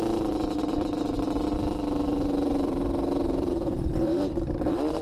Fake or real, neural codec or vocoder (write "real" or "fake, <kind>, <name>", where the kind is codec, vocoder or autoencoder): fake, vocoder, BigVGAN v2